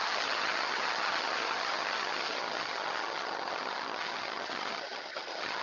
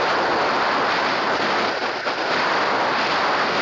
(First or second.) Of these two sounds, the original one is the second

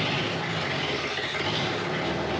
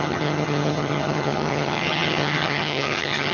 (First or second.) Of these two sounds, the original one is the first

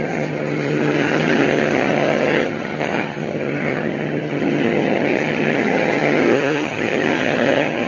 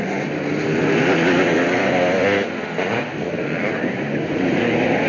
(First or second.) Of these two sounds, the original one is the second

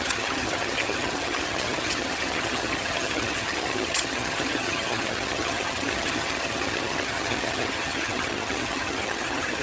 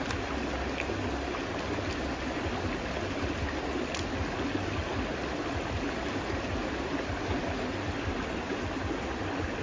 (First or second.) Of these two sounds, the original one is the second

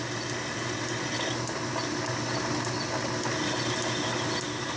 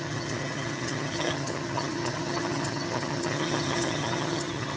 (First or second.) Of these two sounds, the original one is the first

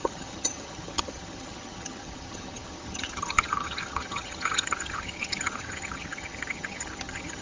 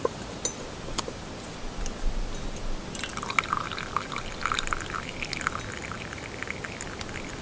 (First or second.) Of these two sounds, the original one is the second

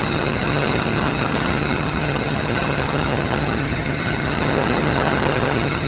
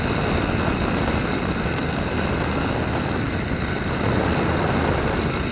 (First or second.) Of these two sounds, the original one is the second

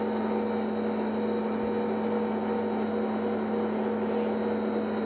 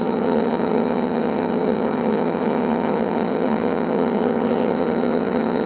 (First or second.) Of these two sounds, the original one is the first